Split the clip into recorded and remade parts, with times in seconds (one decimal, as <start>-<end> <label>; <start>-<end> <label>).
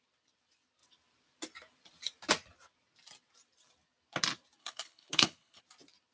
0.0-4.6 recorded; 4.6-5.6 remade; 5.6-6.1 recorded